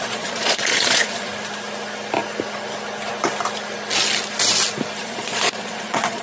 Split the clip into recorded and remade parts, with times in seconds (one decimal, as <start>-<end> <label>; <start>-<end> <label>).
0.0-1.3 remade; 1.3-5.0 recorded; 5.0-6.2 remade